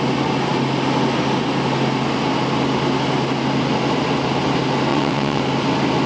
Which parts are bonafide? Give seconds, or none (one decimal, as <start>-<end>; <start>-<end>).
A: 0.0-4.9; 5.4-6.1